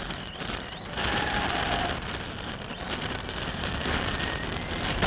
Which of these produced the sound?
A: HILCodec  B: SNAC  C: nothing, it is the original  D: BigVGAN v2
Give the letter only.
D